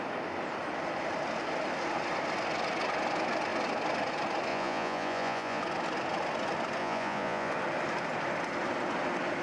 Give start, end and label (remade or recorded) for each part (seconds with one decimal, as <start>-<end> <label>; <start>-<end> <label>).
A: 0.0-4.5 recorded; 4.5-5.6 remade; 5.6-6.8 recorded; 6.8-7.5 remade; 7.5-9.4 recorded